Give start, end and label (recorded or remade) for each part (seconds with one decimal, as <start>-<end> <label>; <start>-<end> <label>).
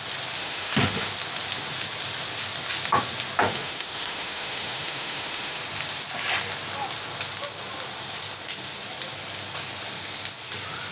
0.0-0.4 recorded; 0.4-1.1 remade; 1.1-3.4 recorded; 3.4-5.6 remade; 5.6-10.9 recorded